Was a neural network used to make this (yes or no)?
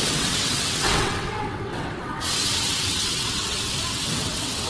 yes